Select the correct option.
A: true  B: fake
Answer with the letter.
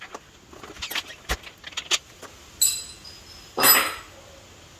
A